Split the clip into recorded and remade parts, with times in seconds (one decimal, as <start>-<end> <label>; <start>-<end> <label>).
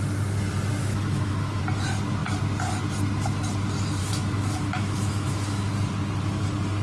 0.0-0.8 recorded; 0.8-1.6 remade; 1.6-4.0 recorded; 4.0-5.7 remade; 5.7-6.8 recorded